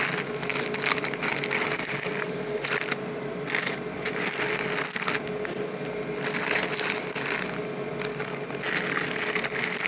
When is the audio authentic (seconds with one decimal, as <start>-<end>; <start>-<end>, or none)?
0.0-9.9